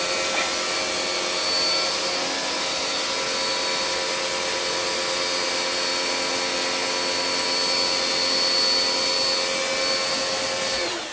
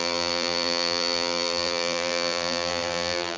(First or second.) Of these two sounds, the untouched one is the first